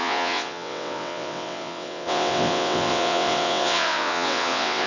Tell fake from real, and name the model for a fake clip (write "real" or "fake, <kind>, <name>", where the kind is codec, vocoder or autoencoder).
fake, vocoder, WaveNeXt